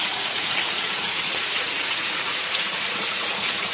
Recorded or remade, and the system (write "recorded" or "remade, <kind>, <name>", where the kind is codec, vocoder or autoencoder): remade, vocoder, Vocos